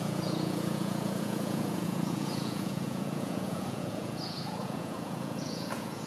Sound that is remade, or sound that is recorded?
remade